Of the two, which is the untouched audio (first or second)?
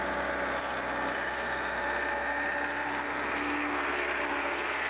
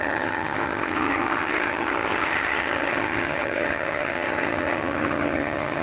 first